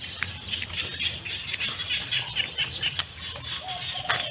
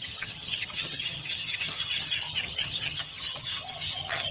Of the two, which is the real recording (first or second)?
first